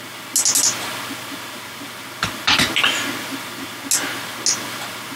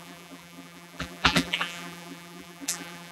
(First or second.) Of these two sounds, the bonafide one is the first